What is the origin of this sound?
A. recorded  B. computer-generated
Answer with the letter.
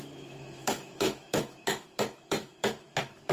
B